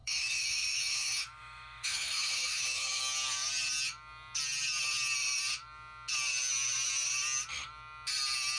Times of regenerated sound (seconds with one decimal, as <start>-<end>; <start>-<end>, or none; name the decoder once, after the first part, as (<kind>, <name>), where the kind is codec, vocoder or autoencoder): 0.0-3.0 (autoencoder, DAC-VAE)